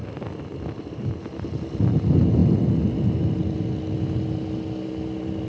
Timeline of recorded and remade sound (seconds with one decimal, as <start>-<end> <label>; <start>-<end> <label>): 0.0-5.5 recorded